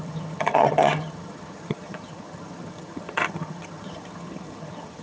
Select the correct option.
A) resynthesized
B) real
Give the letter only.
A